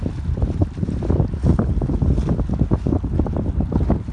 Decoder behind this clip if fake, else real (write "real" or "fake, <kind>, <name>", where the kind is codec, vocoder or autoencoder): real